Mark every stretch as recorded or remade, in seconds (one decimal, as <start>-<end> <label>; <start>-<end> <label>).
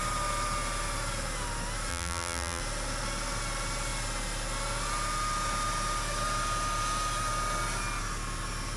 0.0-1.9 recorded; 1.9-2.6 remade; 2.6-8.8 recorded